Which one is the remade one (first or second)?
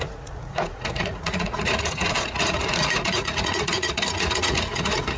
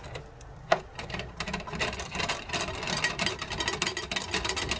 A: first